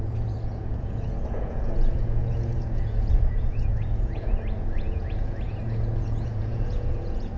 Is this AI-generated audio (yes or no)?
yes